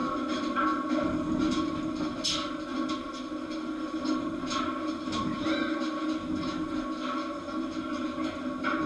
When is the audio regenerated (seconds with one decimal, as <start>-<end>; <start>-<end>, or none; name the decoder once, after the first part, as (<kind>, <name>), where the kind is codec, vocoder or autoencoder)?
none